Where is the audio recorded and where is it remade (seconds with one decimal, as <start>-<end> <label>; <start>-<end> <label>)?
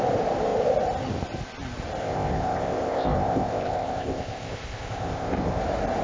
0.0-2.0 recorded; 2.0-5.6 remade; 5.6-6.0 recorded